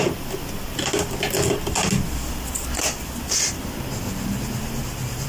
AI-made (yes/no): no